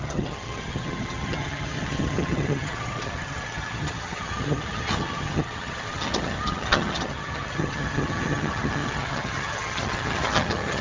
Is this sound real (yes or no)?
no